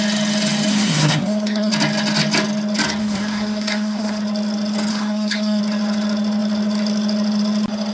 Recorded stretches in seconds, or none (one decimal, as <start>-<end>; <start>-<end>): 0.0-0.7; 1.7-3.0; 4.2-4.9; 5.6-7.9